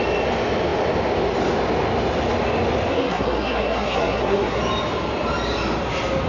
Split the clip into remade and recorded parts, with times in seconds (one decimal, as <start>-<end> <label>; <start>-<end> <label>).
0.0-2.9 recorded; 2.9-4.6 remade; 4.6-6.3 recorded

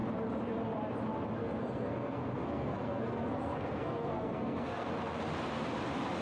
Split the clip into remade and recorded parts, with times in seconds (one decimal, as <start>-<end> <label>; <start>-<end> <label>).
0.0-1.4 recorded; 1.4-4.9 remade; 4.9-6.2 recorded

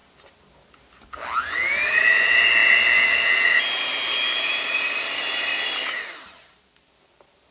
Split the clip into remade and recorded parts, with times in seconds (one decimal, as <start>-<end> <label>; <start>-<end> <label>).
0.0-7.5 recorded

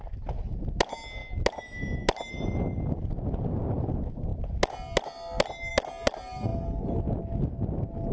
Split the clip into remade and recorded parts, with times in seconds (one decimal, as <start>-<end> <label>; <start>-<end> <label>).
0.0-8.1 recorded

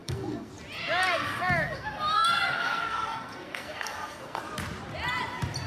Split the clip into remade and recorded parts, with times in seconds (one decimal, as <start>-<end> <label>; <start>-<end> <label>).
0.0-0.5 remade; 0.5-1.0 recorded; 1.0-4.4 remade; 4.4-5.7 recorded

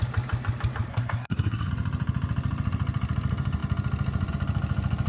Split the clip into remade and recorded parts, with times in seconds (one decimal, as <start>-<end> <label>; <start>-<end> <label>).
0.0-0.9 recorded; 0.9-1.7 remade; 1.7-5.1 recorded

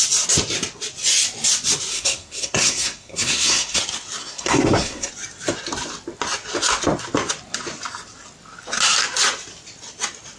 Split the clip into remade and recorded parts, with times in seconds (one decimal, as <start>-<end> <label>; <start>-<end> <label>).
0.0-1.9 recorded; 1.9-3.8 remade; 3.8-4.2 recorded; 4.2-5.1 remade; 5.1-10.4 recorded

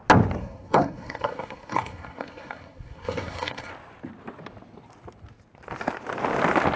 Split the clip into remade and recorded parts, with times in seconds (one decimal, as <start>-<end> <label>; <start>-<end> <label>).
0.0-0.4 recorded; 0.4-3.7 remade; 3.7-6.8 recorded